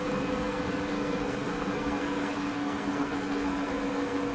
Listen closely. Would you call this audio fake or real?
fake